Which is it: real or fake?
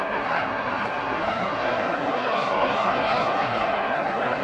fake